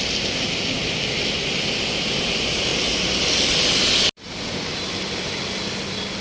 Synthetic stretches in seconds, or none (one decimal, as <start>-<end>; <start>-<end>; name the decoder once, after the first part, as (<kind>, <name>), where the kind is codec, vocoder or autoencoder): none